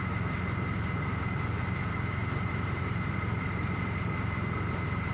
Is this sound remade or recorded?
recorded